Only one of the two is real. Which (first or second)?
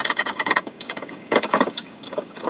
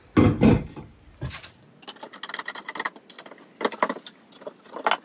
second